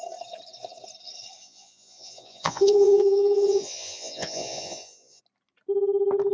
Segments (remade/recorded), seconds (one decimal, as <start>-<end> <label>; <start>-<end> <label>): 0.0-1.4 recorded; 1.4-5.2 remade; 5.2-6.3 recorded